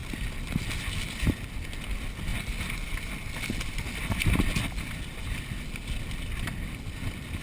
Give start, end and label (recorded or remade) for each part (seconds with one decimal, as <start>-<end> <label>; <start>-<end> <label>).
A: 0.0-7.4 recorded